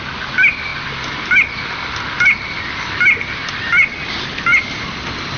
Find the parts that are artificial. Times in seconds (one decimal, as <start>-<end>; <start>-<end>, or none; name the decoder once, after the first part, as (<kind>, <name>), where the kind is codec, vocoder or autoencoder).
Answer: none